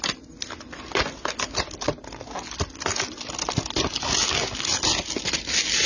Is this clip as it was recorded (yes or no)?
yes